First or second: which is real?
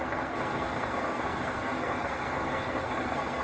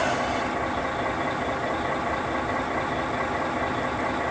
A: second